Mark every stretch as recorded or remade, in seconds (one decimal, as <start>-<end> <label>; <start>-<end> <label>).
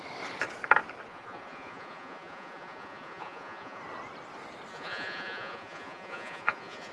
0.0-1.1 recorded; 1.1-3.8 remade; 3.8-4.7 recorded; 4.7-6.9 remade